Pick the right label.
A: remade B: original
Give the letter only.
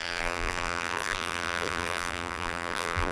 A